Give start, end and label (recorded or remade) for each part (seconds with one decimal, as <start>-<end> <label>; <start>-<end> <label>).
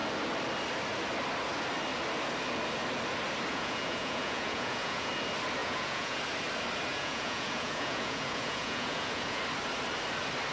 0.0-3.5 recorded; 3.5-5.1 remade; 5.1-5.6 recorded; 5.6-6.2 remade; 6.2-6.9 recorded; 6.9-9.4 remade; 9.4-10.5 recorded